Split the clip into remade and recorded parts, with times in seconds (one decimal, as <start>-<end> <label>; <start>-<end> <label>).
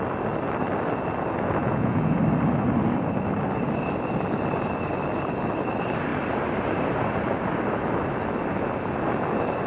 0.0-1.6 recorded; 1.6-2.2 remade; 2.2-9.7 recorded